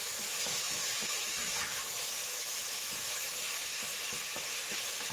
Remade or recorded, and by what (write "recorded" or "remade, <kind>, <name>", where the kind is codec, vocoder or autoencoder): remade, autoencoder, DAC-VAE